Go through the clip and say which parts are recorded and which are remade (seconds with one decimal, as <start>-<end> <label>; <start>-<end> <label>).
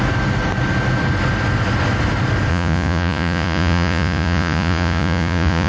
0.0-2.5 recorded; 2.5-5.7 remade